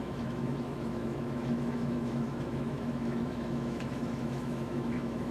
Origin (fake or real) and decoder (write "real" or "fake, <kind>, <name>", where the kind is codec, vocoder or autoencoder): fake, autoencoder, DAC-VAE